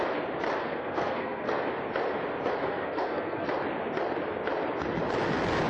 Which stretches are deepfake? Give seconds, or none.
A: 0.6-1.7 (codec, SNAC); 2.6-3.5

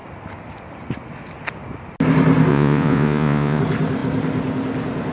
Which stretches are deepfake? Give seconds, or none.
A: 2.5-3.6 (vocoder, Vocos)

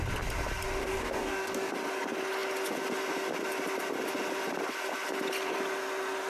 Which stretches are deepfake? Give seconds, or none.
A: 0.8-1.7 (codec, DAC)

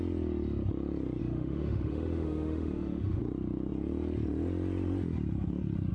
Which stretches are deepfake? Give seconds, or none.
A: 1.2-3.2 (autoencoder, DAC-VAE)

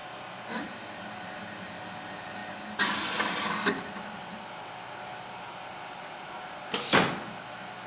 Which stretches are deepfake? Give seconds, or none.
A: none